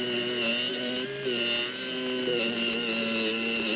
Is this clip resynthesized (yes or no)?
no